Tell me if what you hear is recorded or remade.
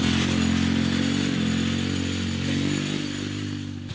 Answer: recorded